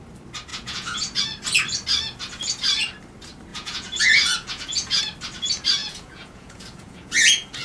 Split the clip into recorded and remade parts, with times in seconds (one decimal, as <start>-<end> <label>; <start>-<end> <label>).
0.0-0.5 recorded; 0.5-1.2 remade; 1.2-3.5 recorded; 3.5-5.0 remade; 5.0-5.8 recorded; 5.8-7.6 remade